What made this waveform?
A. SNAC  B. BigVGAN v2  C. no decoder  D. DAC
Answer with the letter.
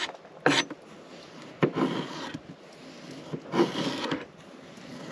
C